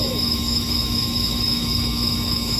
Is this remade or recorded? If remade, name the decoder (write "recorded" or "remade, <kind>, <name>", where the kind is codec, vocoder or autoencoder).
remade, autoencoder, DAC-VAE